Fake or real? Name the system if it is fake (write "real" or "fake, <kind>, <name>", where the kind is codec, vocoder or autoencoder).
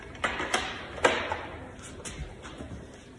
real